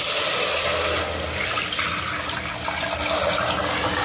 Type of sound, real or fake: real